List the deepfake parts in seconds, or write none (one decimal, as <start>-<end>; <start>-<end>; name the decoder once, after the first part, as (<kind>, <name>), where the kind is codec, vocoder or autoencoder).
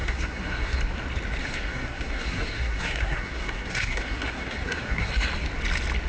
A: 0.0-0.8 (codec, SNAC); 1.4-5.1